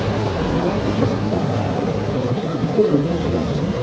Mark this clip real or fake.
fake